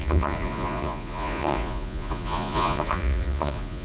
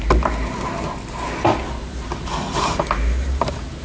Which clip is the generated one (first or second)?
first